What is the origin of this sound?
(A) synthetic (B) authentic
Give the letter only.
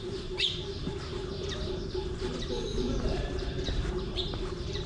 A